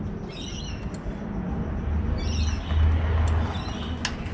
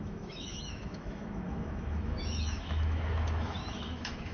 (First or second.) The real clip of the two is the first